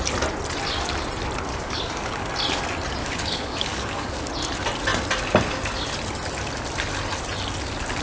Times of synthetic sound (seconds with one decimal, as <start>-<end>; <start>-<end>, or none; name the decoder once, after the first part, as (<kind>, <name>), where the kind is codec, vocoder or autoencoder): 1.5-2.3 (codec, DAC); 3.0-4.3